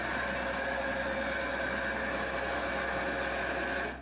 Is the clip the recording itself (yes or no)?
yes